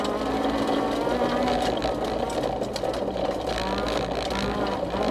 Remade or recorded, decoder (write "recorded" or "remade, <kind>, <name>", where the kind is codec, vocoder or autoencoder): recorded